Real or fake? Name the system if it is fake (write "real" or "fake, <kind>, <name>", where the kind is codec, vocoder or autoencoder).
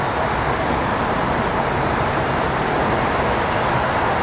real